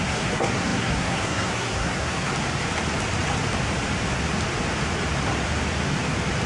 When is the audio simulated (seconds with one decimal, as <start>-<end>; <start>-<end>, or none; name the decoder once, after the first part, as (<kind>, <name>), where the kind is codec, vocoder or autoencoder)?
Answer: 0.0-2.3 (codec, SNAC)